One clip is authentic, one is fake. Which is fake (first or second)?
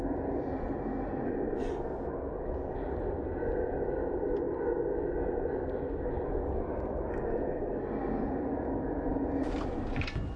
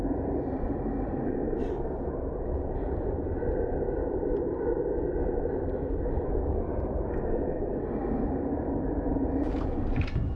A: second